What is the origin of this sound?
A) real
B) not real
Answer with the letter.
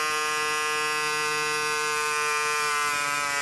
A